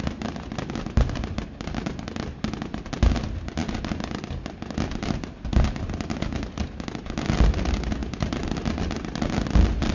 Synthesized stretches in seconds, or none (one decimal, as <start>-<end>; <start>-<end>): none